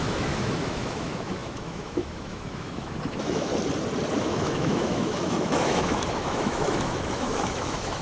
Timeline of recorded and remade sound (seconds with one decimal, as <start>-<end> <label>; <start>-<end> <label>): 0.0-3.5 remade; 3.5-4.2 recorded; 4.2-8.0 remade